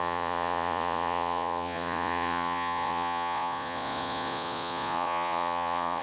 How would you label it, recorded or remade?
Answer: remade